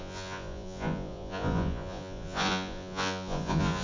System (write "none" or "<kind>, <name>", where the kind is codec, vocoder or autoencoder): vocoder, Vocos